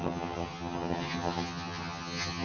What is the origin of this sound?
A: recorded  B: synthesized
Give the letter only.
B